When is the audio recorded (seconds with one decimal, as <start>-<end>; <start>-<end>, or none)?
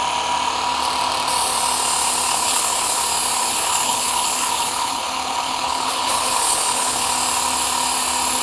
0.0-2.3; 3.0-3.4; 7.1-8.4